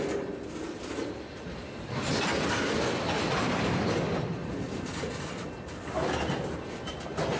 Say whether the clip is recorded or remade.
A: recorded